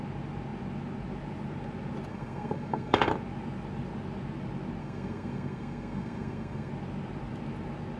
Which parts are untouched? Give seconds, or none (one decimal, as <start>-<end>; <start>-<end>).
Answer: 0.0-2.1; 3.1-4.8; 6.7-8.0